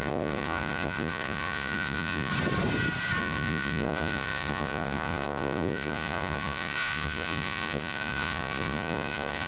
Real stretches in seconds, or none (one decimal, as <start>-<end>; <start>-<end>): 2.3-3.2